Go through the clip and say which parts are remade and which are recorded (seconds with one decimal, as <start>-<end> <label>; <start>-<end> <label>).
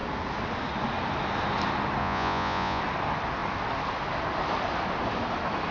0.0-2.0 recorded; 2.0-2.8 remade; 2.8-5.7 recorded